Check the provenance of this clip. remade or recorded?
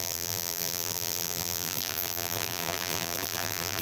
remade